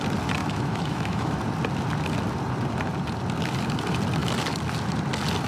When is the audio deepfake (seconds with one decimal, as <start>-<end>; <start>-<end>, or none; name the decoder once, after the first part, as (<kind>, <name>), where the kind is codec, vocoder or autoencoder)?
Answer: 0.4-1.4 (autoencoder, DAC-VAE)